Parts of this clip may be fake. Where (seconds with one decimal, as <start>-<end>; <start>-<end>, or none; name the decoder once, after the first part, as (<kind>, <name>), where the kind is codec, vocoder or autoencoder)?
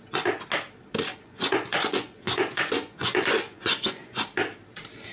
1.1-4.2 (vocoder, Vocos)